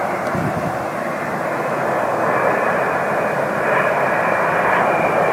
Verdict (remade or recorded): recorded